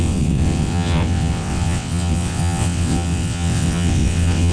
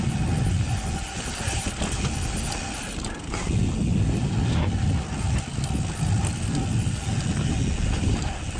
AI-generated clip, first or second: first